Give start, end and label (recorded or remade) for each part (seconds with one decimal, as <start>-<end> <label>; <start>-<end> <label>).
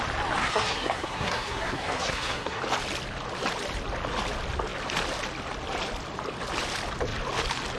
0.0-0.4 recorded; 0.4-2.6 remade; 2.6-7.8 recorded